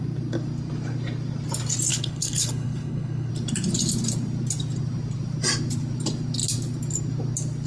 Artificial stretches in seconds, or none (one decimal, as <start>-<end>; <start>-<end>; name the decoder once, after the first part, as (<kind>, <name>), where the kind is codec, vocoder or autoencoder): 1.9-3.3 (codec, HILCodec)